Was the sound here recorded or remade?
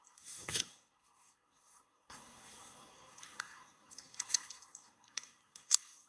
remade